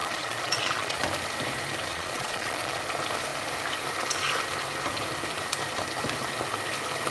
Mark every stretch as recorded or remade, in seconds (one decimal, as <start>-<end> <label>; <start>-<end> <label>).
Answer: 0.0-1.0 remade; 1.0-1.9 recorded; 1.9-2.8 remade; 2.8-7.1 recorded